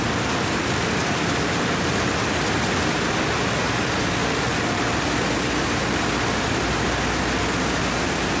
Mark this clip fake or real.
real